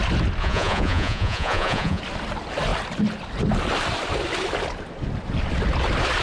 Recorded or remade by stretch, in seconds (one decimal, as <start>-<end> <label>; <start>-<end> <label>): 0.0-0.4 recorded; 0.4-2.0 remade; 2.0-6.2 recorded